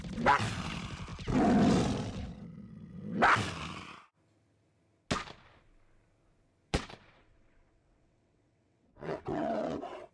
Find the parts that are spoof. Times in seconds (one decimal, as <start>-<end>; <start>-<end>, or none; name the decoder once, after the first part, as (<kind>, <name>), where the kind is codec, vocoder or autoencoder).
6.7-10.1 (vocoder, WaveNeXt)